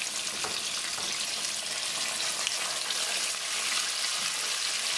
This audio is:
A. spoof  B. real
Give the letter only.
B